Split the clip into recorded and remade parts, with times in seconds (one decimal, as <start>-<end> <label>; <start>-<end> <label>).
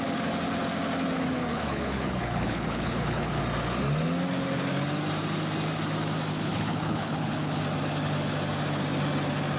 0.0-1.5 recorded; 1.5-3.4 remade; 3.4-6.3 recorded; 6.3-7.6 remade; 7.6-9.6 recorded